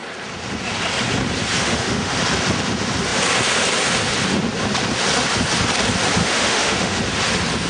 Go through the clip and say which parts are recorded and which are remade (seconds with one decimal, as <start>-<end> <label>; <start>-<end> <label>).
0.0-1.6 recorded; 1.6-2.1 remade; 2.1-6.2 recorded; 6.2-7.0 remade; 7.0-7.7 recorded